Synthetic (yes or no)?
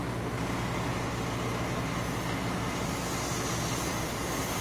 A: no